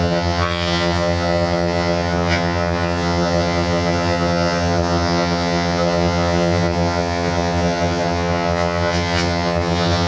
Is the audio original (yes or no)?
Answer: no